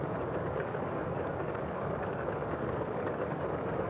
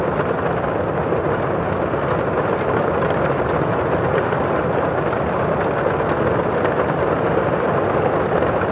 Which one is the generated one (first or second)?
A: first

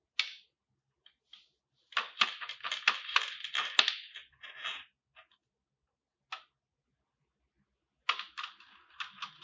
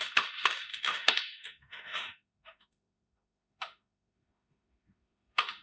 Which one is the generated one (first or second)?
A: second